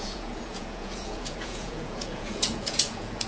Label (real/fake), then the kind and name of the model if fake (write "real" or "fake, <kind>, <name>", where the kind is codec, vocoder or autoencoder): fake, vocoder, Vocos